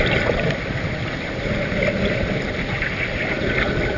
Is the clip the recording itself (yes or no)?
yes